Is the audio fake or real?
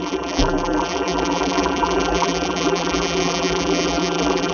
fake